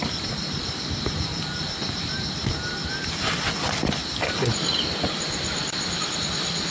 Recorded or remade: recorded